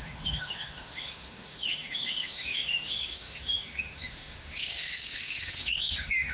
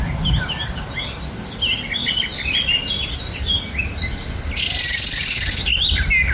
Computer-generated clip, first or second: first